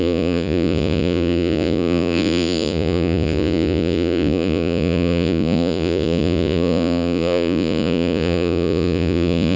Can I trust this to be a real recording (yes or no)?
no